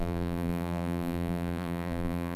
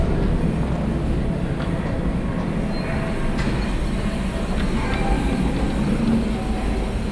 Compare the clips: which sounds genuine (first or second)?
second